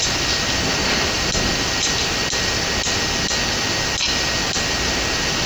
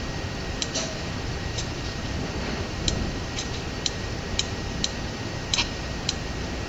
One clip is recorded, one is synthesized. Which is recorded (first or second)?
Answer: first